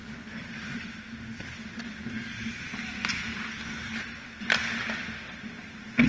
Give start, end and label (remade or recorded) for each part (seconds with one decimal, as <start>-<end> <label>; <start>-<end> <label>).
0.0-0.5 remade; 0.5-6.1 recorded

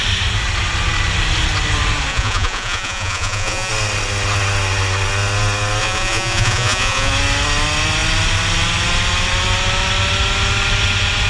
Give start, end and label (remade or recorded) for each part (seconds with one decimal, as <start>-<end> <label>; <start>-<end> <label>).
0.0-2.1 recorded; 2.1-3.7 remade; 3.7-5.8 recorded; 5.8-7.1 remade; 7.1-11.3 recorded

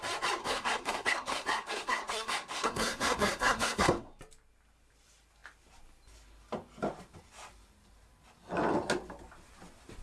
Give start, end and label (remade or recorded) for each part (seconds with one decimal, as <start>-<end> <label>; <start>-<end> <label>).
0.0-0.4 recorded; 0.4-4.2 remade; 4.2-10.0 recorded